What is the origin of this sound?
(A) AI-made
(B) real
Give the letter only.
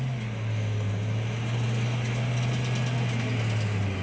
B